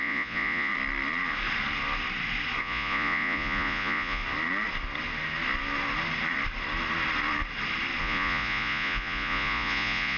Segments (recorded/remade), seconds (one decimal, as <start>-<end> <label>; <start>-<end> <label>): 0.0-0.7 remade; 0.7-2.6 recorded; 2.6-4.2 remade; 4.2-8.0 recorded; 8.0-10.2 remade